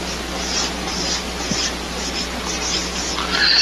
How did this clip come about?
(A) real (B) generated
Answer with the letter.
A